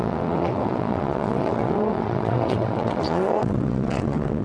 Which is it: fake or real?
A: fake